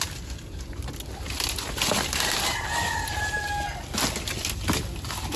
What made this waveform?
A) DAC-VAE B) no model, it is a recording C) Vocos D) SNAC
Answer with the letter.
B